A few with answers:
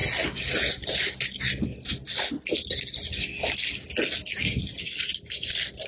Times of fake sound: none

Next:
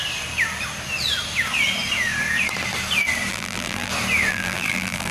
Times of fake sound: 3.3-3.9 (vocoder, BigVGAN v2); 4.3-5.1